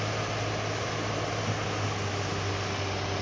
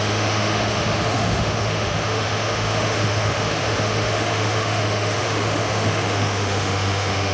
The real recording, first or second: first